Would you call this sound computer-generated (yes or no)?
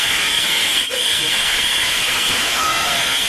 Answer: yes